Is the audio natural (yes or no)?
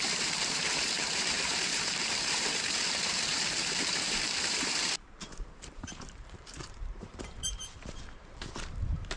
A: no